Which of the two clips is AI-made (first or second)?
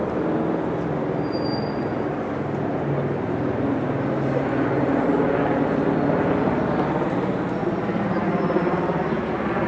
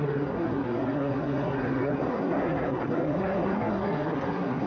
second